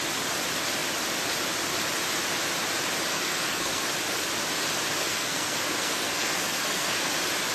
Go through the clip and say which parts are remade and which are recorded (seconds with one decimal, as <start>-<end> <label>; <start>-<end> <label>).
0.0-3.1 recorded; 3.1-3.9 remade; 3.9-5.0 recorded; 5.0-7.1 remade; 7.1-7.5 recorded